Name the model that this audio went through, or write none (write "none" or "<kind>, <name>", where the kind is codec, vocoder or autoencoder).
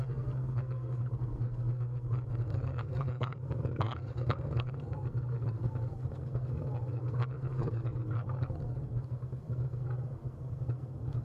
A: codec, SNAC